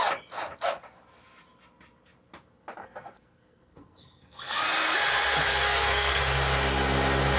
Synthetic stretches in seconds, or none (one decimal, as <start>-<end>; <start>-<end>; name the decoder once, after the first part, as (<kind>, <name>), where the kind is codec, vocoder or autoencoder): 2.8-4.6 (codec, SNAC); 5.5-6.2